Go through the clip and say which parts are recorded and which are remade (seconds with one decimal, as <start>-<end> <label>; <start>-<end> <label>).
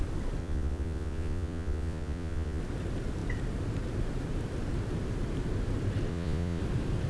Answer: 0.0-0.4 recorded; 0.4-2.6 remade; 2.6-6.1 recorded; 6.1-6.6 remade; 6.6-7.1 recorded